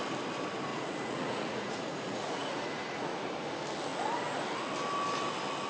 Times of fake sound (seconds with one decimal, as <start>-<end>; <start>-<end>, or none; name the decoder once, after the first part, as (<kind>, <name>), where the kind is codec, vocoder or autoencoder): 0.7-3.3 (vocoder, Vocos)